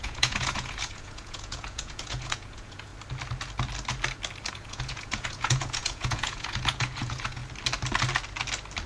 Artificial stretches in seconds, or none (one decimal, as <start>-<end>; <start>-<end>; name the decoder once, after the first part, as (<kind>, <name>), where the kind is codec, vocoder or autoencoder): 0.0-2.9 (vocoder, Vocos); 4.5-7.4